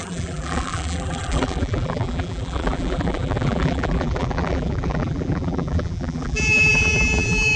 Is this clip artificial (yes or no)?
yes